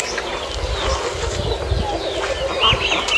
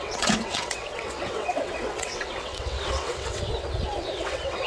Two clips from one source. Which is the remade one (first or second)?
second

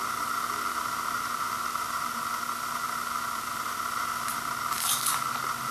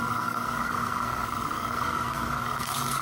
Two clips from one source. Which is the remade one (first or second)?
second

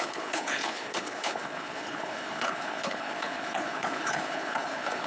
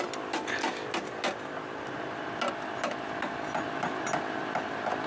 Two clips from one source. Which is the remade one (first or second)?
first